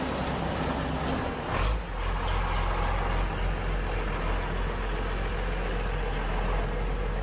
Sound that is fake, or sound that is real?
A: real